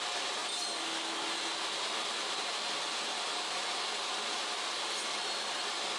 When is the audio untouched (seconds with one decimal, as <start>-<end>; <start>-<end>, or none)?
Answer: 0.0-6.0